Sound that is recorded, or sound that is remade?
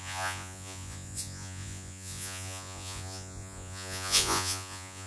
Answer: remade